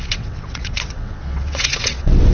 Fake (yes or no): yes